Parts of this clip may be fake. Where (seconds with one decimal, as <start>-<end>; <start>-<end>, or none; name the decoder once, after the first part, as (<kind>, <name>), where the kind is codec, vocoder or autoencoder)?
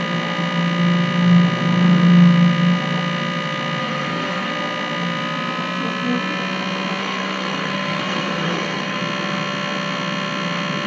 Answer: 3.8-4.5 (codec, SNAC); 7.0-9.0